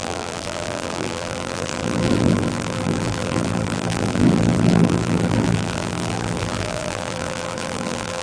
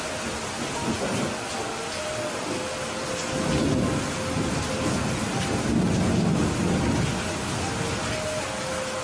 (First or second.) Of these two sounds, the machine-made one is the first